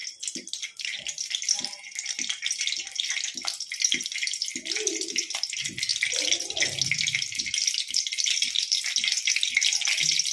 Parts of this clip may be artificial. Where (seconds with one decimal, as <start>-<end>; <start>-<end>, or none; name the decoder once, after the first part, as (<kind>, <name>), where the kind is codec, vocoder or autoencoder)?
none